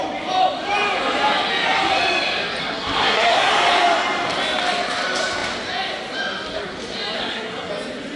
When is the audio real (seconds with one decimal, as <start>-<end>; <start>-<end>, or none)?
0.0-2.6; 3.5-7.2; 7.7-8.2